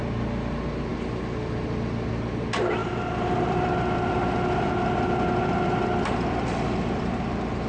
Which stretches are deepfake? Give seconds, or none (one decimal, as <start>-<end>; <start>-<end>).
0.9-2.1; 2.8-7.2